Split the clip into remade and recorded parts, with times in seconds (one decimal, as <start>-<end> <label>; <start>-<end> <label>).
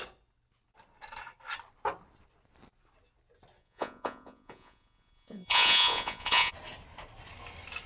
0.0-3.6 recorded; 3.6-6.5 remade; 6.5-7.9 recorded